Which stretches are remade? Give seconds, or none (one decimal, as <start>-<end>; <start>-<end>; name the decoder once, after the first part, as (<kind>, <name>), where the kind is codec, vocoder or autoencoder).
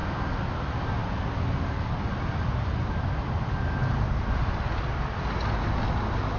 none